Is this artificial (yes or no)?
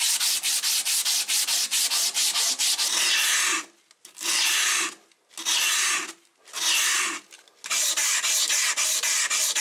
no